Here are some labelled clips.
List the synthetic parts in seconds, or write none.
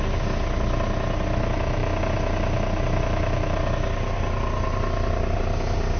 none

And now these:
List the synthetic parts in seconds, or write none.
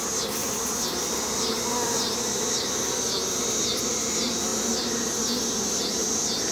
0.4-2.6 (vocoder, BigVGAN v2)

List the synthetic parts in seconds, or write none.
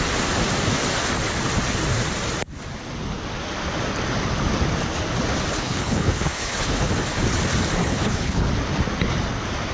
5.5-6.9 (codec, HILCodec); 7.8-8.5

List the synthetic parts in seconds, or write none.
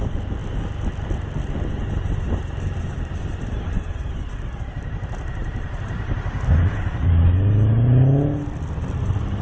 1.8-7.1 (vocoder, BigVGAN v2)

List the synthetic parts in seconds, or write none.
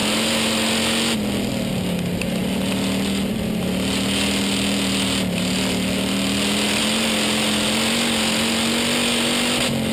none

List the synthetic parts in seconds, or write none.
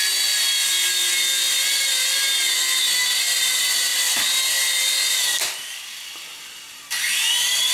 3.9-4.4 (vocoder, BigVGAN v2)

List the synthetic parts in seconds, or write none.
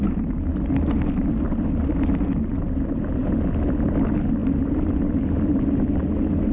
4.4-5.4 (vocoder, BigVGAN v2)